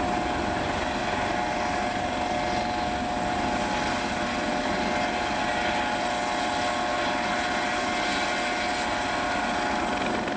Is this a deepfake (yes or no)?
no